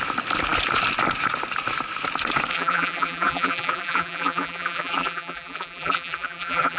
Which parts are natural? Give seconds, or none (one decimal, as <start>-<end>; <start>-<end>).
0.0-2.5